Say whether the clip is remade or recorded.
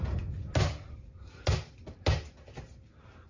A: recorded